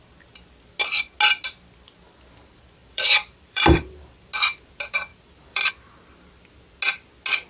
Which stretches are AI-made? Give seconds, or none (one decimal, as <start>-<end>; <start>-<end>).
2.8-4.3; 5.1-5.7